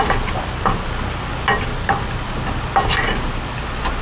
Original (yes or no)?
yes